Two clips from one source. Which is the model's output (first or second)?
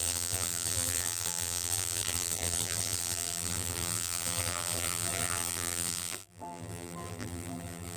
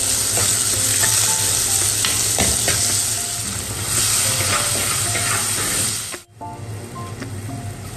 first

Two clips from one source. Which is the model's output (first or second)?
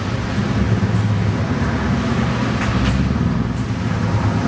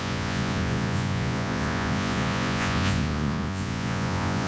second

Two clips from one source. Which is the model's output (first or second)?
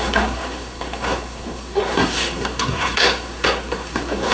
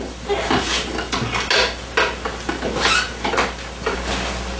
first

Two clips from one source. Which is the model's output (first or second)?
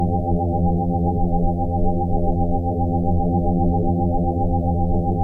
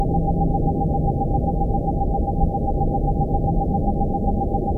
first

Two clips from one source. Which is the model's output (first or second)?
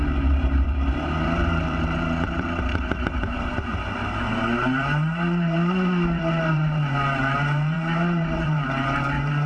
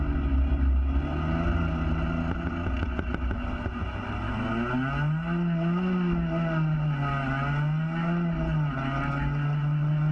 first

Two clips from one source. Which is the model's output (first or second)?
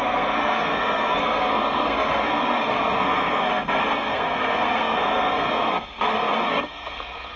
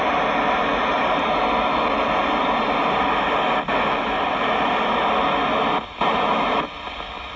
first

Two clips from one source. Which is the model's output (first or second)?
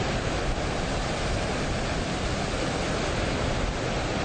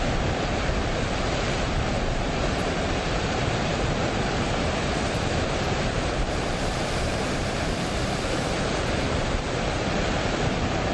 second